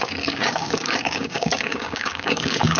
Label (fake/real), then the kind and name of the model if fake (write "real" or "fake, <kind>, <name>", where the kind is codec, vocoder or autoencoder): fake, codec, DAC